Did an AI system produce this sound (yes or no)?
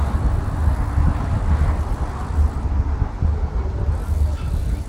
no